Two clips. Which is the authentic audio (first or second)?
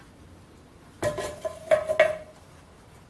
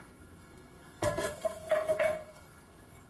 first